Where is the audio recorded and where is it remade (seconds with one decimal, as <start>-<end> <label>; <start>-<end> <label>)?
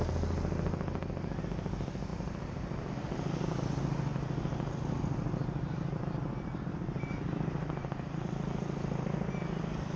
0.0-2.1 recorded; 2.1-2.9 remade; 2.9-4.1 recorded; 4.1-9.3 remade; 9.3-10.0 recorded